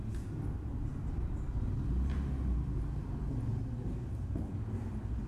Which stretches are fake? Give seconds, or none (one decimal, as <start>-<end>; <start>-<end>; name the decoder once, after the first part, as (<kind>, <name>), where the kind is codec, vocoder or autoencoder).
none